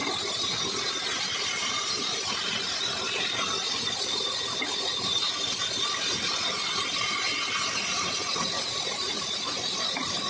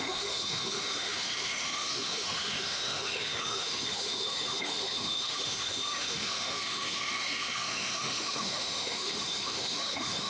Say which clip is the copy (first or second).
second